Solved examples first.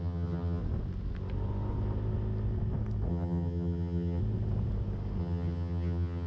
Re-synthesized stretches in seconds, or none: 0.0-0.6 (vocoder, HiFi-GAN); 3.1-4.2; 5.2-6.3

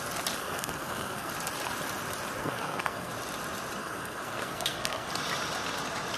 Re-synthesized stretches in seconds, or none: 0.4-1.3 (codec, SNAC); 2.4-3.1; 3.8-5.1

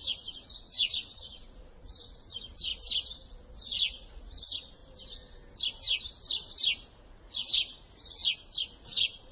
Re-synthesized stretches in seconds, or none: 0.0-2.7 (vocoder, Vocos); 3.6-4.8; 7.0-8.2; 8.8-9.3

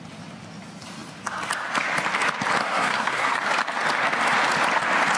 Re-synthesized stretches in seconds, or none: 2.6-3.4 (codec, SNAC)

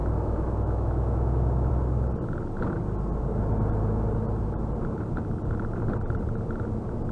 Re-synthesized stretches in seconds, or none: 0.0-1.7 (autoencoder, DAC-VAE)

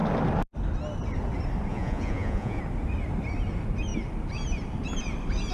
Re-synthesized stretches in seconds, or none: 1.7-2.6 (vocoder, Vocos)

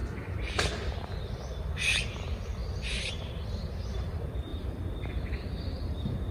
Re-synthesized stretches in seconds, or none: 1.2-6.3 (vocoder, BigVGAN v2)

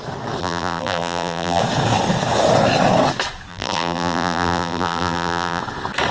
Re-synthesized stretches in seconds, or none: 0.4-1.6 (vocoder, BigVGAN v2); 3.5-5.6